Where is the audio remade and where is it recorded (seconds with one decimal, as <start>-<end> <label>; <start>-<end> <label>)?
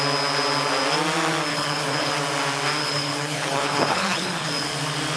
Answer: 0.0-1.5 recorded; 1.5-2.1 remade; 2.1-2.8 recorded; 2.8-4.5 remade; 4.5-5.2 recorded